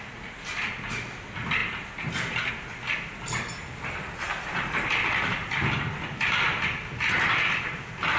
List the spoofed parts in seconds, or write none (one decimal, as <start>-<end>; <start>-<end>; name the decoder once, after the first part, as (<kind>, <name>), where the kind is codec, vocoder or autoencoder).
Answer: none